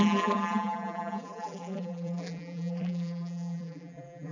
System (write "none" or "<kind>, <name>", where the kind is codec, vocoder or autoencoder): vocoder, BigVGAN v2